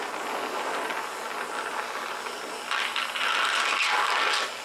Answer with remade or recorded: recorded